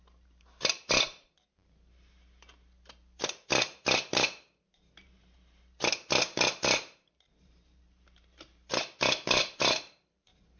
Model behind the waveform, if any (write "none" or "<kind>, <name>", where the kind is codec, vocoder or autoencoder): vocoder, BigVGAN v2